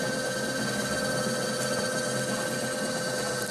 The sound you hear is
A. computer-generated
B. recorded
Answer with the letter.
B